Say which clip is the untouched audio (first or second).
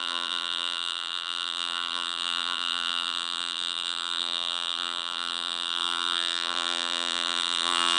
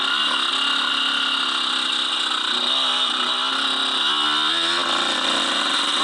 second